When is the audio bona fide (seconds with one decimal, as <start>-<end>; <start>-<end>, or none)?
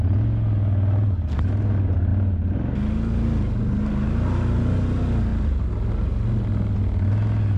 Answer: 0.0-7.6